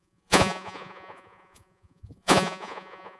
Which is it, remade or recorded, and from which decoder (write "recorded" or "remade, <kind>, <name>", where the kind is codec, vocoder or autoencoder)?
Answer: remade, vocoder, Vocos